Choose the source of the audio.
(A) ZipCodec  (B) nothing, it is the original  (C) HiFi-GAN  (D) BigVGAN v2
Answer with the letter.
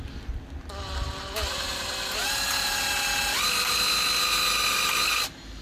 B